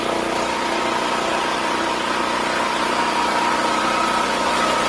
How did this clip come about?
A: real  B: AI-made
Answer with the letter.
A